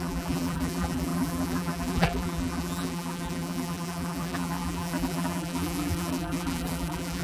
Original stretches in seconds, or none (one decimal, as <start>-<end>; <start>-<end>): none